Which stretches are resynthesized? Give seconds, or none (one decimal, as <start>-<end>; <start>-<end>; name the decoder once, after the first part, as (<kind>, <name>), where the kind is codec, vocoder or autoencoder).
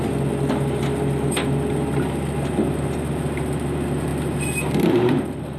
none